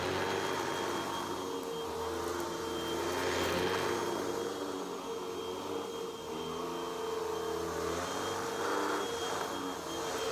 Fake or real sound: real